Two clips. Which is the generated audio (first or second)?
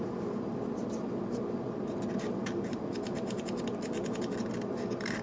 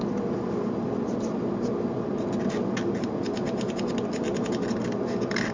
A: first